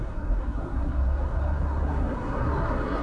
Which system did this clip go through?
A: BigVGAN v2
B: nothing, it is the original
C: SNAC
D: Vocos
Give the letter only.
C